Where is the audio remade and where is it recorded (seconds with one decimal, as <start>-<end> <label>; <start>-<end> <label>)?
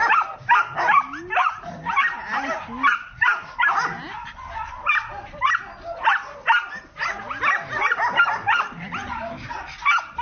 0.0-10.2 recorded